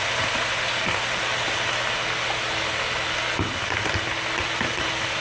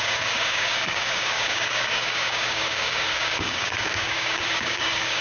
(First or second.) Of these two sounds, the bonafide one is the first